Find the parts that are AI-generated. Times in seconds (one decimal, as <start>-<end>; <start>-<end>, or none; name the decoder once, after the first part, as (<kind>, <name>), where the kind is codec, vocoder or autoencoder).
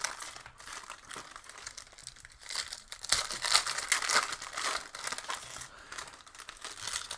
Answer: 2.0-3.1 (vocoder, BigVGAN v2)